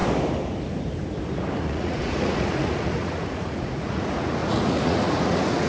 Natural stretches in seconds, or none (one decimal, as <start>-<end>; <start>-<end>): 0.0-1.6